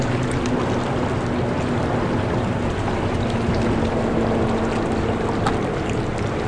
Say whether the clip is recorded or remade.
recorded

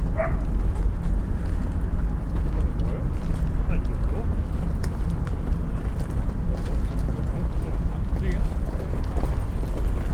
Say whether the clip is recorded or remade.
recorded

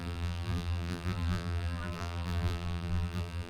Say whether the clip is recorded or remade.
remade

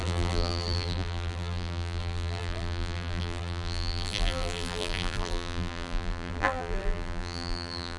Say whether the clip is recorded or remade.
remade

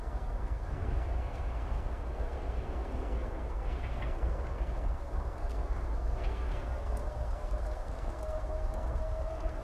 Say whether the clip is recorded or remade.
remade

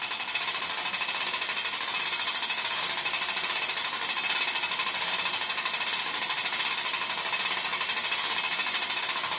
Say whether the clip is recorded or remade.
recorded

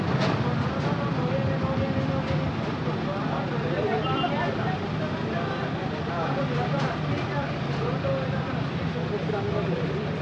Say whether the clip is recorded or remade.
recorded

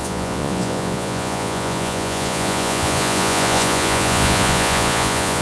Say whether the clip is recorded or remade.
remade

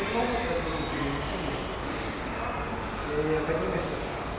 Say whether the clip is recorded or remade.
recorded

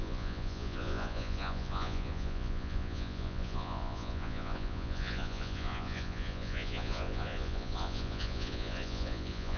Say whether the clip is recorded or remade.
remade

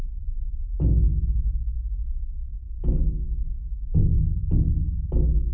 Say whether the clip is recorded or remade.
recorded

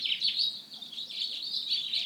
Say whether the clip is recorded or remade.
recorded